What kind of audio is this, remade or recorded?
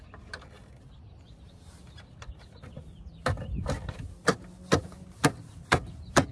recorded